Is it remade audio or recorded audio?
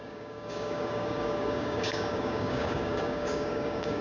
remade